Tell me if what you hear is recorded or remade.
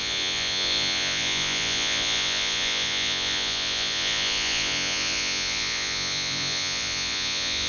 remade